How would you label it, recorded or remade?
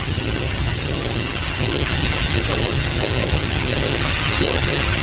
remade